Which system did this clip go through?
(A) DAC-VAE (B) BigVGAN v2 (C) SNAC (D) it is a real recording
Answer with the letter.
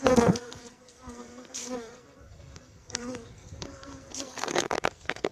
C